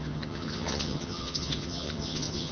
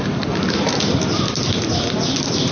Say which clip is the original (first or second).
second